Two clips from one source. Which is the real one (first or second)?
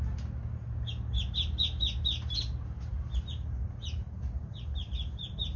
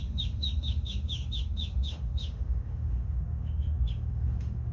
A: first